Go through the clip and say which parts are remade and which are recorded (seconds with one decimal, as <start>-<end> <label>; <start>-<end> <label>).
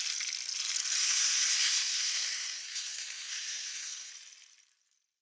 0.0-1.0 recorded; 1.0-4.1 remade; 4.1-5.2 recorded